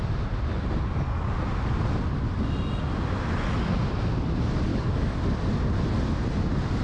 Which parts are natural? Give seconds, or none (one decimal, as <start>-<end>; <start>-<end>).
0.0-4.7; 5.2-6.8